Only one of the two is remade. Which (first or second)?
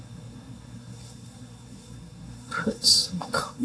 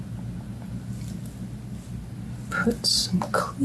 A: first